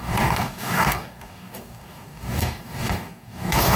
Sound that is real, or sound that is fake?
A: fake